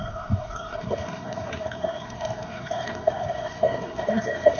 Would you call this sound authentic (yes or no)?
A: no